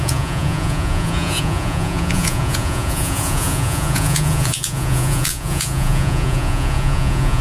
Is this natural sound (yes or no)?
no